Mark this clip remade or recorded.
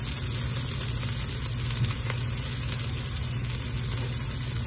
recorded